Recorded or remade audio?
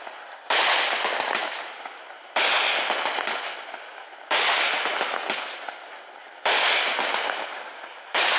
recorded